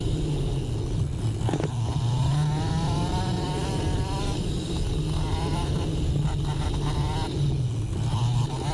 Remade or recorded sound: recorded